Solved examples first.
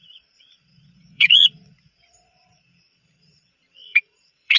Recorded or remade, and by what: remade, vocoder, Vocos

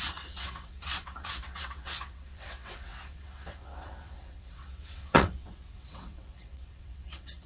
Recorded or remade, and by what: remade, vocoder, WaveNeXt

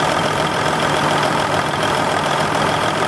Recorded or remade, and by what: remade, vocoder, BigVGAN v2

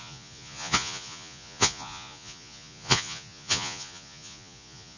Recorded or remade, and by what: remade, vocoder, Vocos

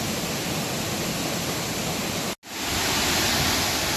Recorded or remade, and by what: recorded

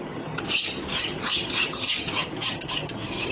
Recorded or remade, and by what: remade, vocoder, HiFi-GAN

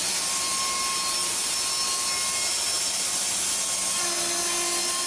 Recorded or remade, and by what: recorded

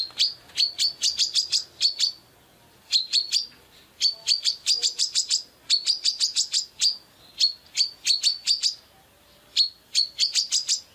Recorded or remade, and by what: recorded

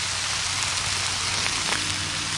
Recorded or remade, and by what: recorded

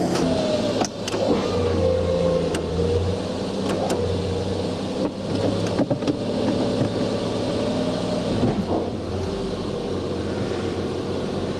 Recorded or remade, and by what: recorded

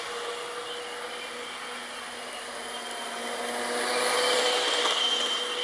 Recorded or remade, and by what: recorded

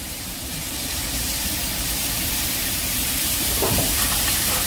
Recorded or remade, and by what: remade, vocoder, BigVGAN v2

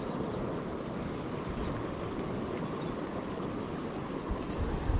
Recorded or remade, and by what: recorded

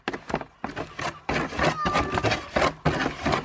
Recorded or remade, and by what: recorded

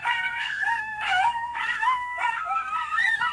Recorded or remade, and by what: remade, codec, SNAC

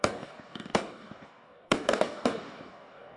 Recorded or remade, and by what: remade, codec, DAC